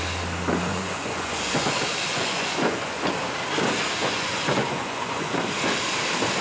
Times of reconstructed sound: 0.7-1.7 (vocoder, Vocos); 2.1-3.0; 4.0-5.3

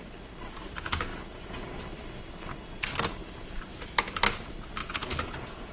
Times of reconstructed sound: 1.1-1.7 (vocoder, Vocos); 4.8-5.7

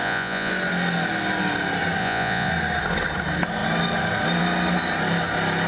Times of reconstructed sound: 0.0-0.5 (vocoder, Vocos); 2.0-2.5

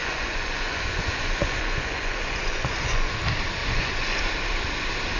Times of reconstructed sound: 0.0-3.1 (vocoder, Vocos); 3.6-4.2